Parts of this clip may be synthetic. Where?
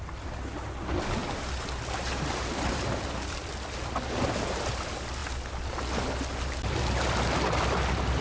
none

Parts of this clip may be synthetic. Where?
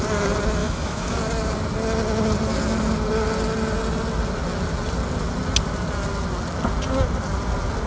0.6-1.2 (autoencoder, DAC-VAE)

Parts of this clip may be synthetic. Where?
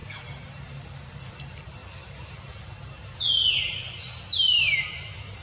none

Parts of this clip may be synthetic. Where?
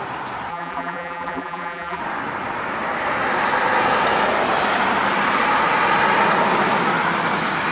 0.5-2.0 (vocoder, BigVGAN v2)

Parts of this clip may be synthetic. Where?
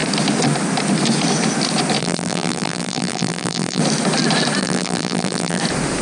2.0-3.8 (vocoder, BigVGAN v2); 4.6-5.6